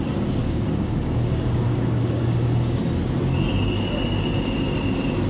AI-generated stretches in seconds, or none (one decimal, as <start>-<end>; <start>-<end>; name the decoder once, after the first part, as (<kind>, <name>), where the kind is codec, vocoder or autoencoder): 0.4-2.8 (codec, DAC)